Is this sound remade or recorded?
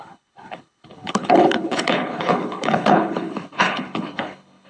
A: remade